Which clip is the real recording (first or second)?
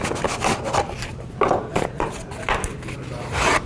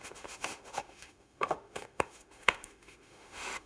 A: first